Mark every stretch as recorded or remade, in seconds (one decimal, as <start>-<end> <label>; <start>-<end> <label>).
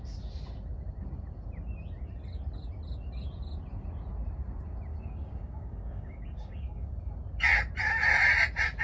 0.0-4.9 recorded; 4.9-7.1 remade; 7.1-8.8 recorded